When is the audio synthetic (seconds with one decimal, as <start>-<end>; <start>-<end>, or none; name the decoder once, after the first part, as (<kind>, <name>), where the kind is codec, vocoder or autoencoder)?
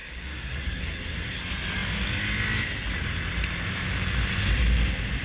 0.0-1.4 (codec, SNAC)